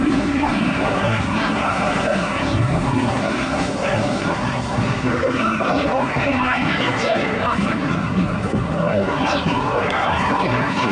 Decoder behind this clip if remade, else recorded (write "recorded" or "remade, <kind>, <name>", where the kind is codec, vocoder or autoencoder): remade, codec, SNAC